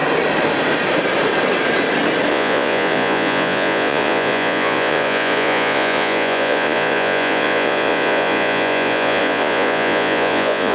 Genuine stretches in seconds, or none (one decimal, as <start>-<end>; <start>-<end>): 0.0-2.3